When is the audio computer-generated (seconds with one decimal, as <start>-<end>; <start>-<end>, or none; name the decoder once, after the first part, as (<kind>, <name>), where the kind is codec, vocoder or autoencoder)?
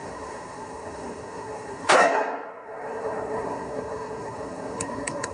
0.0-5.3 (codec, SNAC)